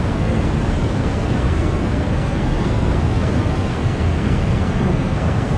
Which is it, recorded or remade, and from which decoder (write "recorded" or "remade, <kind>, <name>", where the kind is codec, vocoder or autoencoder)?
remade, codec, SNAC